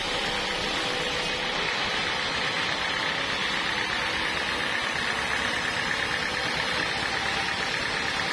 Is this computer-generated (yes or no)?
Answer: no